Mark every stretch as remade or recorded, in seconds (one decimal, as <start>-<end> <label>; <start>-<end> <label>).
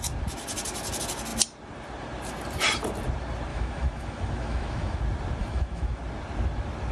0.0-3.5 recorded; 3.5-5.0 remade; 5.0-5.4 recorded; 5.4-6.0 remade; 6.0-6.9 recorded